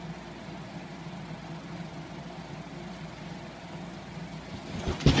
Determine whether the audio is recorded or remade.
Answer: recorded